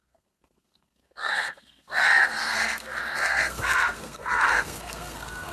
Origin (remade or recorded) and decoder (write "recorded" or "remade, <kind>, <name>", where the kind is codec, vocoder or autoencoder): remade, codec, SNAC